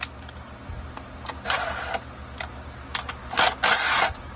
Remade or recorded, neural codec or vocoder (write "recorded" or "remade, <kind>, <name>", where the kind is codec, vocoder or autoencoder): recorded